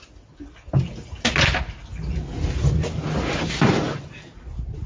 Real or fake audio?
real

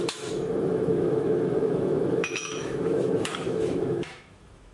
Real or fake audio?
fake